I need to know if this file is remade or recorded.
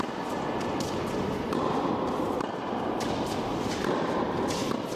remade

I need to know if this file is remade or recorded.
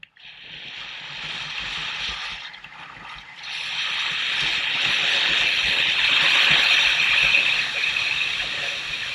recorded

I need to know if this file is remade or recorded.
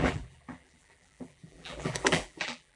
remade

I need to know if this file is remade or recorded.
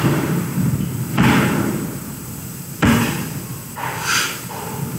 remade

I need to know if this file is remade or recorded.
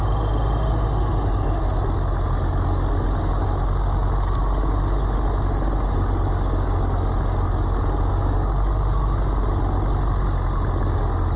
recorded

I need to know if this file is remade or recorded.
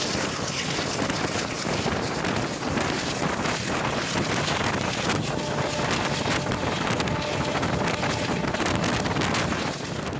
recorded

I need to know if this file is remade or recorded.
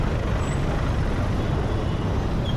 recorded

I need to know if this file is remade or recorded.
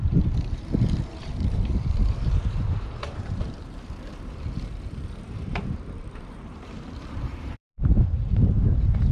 remade